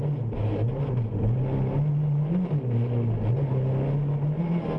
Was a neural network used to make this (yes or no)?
no